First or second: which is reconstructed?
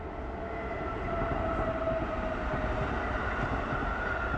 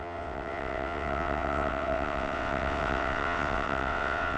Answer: second